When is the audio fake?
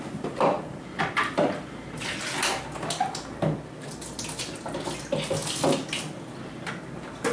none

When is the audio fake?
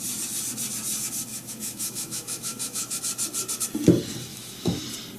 1.3-3.0 (autoencoder, DAC-VAE); 4.3-4.8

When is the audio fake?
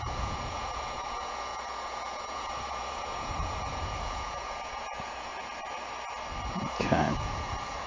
0.0-5.3 (vocoder, Vocos); 6.5-7.9